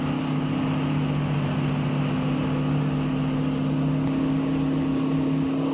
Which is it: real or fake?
real